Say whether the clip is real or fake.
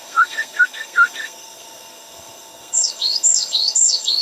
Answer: fake